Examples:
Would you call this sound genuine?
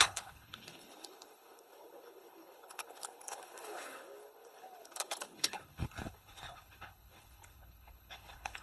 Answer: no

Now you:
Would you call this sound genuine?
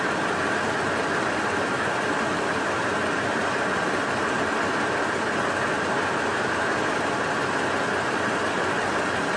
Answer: yes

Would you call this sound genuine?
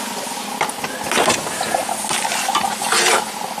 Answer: yes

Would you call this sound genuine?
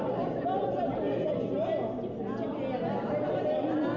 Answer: yes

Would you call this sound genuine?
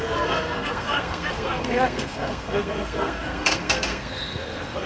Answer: no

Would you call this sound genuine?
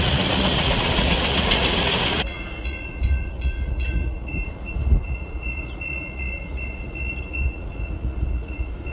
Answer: no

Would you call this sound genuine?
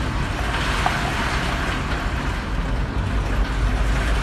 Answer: yes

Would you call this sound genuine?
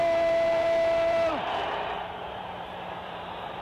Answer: no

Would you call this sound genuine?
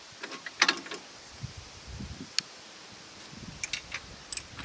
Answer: yes